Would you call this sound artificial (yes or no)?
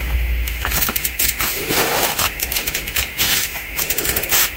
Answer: yes